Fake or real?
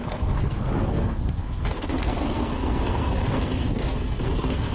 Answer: fake